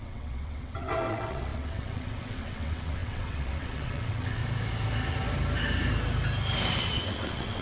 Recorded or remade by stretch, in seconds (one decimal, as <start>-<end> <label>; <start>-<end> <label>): 0.0-4.4 remade; 4.4-6.8 recorded; 6.8-7.6 remade